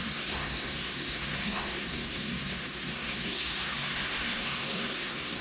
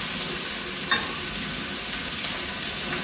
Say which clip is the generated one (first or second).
first